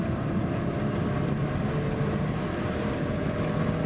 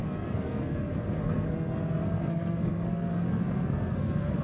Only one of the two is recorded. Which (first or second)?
first